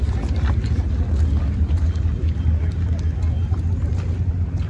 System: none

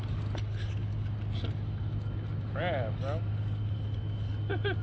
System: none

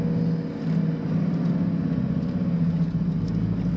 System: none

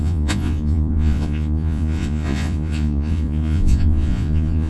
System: vocoder, Vocos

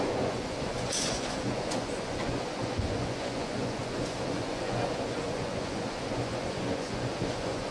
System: vocoder, Vocos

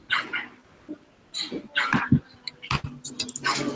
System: none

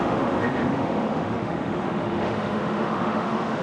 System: autoencoder, DAC-VAE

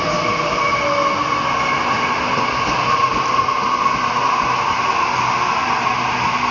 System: none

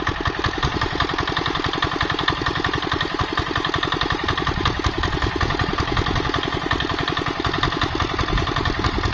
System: none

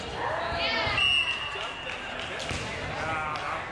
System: none